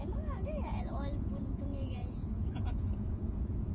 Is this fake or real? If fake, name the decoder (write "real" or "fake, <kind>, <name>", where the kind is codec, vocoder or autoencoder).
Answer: fake, vocoder, Vocos